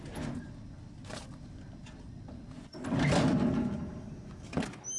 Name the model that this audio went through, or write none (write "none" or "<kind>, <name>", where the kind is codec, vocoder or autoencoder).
none